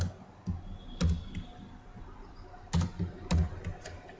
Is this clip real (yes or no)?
yes